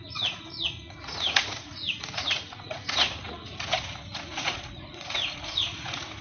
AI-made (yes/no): yes